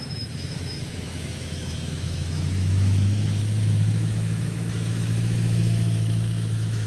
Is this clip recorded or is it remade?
remade